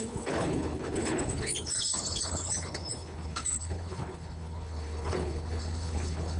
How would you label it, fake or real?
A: fake